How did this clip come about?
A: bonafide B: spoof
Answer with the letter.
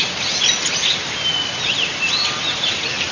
A